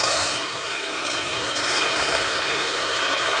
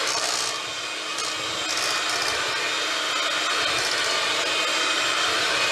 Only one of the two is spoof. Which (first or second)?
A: first